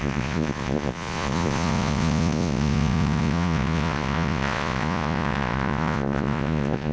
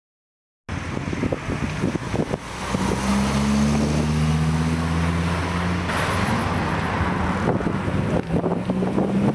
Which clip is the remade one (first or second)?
first